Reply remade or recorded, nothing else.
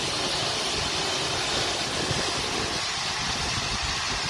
recorded